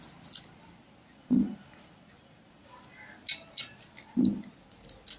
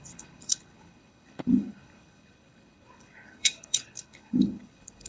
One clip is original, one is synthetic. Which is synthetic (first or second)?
second